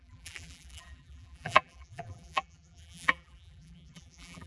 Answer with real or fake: fake